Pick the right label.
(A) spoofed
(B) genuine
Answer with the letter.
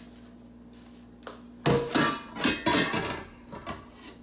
B